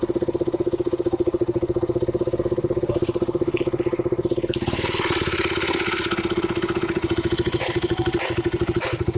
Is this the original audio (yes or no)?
yes